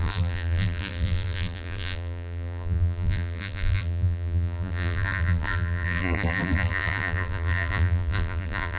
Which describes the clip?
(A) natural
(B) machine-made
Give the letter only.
B